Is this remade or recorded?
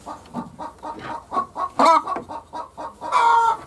recorded